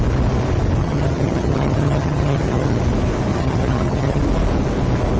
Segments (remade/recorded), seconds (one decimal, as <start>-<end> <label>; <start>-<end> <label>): 0.0-0.8 recorded; 0.8-2.8 remade; 2.8-3.3 recorded; 3.3-4.2 remade; 4.2-5.2 recorded